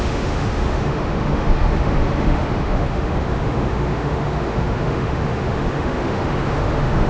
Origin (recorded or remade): remade